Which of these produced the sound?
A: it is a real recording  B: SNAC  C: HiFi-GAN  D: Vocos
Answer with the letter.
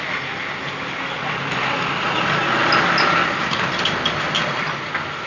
A